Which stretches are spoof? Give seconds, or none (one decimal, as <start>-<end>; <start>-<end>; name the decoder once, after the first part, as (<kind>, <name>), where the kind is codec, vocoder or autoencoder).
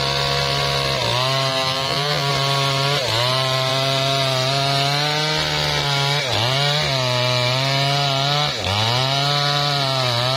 1.5-2.3 (vocoder, BigVGAN v2)